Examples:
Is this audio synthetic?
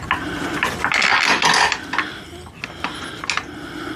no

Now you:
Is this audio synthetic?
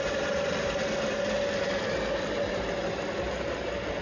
no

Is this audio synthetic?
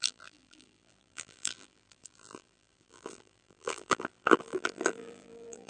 yes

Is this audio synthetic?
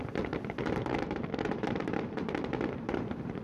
yes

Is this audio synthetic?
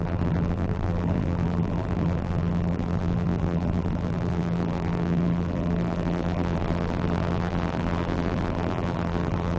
yes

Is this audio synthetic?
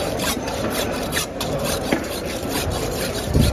yes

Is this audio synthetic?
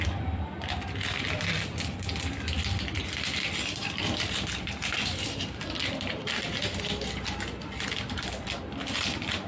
yes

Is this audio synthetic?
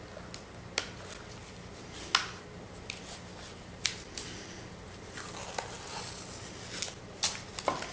no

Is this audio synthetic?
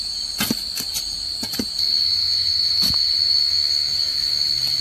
no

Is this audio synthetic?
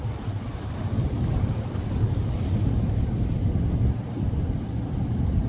yes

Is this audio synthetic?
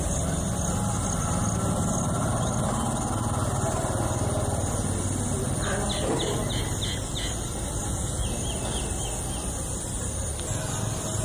no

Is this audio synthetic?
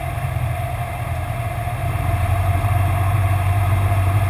yes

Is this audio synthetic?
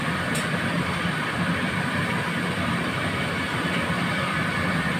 yes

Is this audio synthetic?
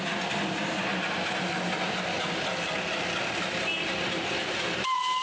no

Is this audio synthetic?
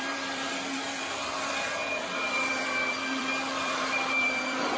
yes